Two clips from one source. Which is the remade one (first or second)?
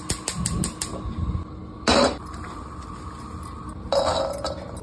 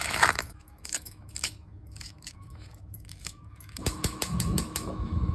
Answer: second